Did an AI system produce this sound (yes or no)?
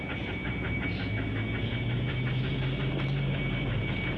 no